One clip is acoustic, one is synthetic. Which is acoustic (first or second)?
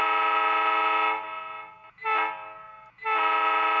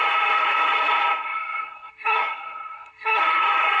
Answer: first